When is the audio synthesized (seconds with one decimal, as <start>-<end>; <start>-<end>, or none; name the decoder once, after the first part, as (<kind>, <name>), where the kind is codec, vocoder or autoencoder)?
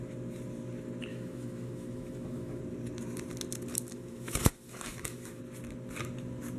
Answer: 1.1-2.6 (autoencoder, DAC-VAE); 3.7-5.4